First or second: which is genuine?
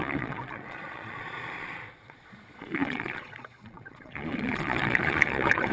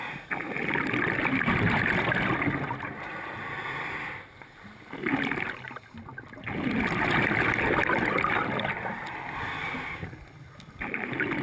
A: second